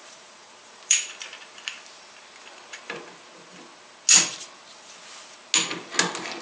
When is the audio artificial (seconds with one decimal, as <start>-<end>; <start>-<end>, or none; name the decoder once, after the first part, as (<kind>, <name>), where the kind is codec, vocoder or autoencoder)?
0.0-2.0 (vocoder, BigVGAN v2)